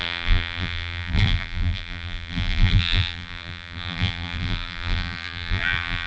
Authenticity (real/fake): fake